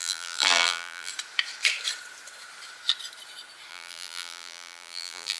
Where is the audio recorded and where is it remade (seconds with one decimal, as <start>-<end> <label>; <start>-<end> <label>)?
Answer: 0.0-1.1 remade; 1.1-3.7 recorded; 3.7-5.4 remade